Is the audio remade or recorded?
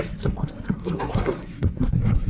remade